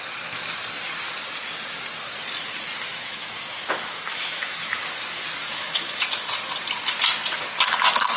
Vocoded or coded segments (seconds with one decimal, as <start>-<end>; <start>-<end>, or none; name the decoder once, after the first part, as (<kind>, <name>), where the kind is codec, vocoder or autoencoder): 2.9-4.8 (autoencoder, DAC-VAE); 5.4-6.3